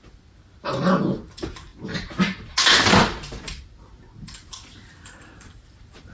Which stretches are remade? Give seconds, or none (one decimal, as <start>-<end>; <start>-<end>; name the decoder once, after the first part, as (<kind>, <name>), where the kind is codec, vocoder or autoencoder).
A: 0.0-1.7 (vocoder, BigVGAN v2); 4.5-6.1